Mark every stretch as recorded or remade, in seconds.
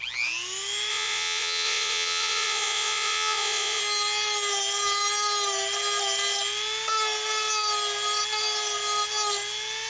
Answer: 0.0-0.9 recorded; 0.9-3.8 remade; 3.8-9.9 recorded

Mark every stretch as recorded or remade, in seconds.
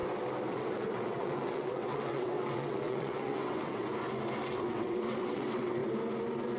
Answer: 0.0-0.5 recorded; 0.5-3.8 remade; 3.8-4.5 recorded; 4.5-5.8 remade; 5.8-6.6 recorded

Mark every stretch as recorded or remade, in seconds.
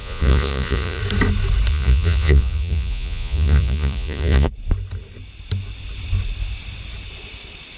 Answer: 0.0-1.0 remade; 1.0-1.7 recorded; 1.7-4.5 remade; 4.5-7.8 recorded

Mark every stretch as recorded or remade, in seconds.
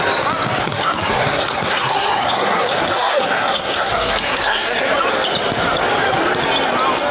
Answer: 0.0-0.6 recorded; 0.6-4.9 remade; 4.9-7.1 recorded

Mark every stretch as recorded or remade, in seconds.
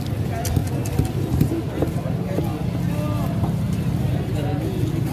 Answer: 0.0-5.1 recorded